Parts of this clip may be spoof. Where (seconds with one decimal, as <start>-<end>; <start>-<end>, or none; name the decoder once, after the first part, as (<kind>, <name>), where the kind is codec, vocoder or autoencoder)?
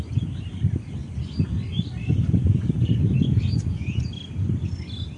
none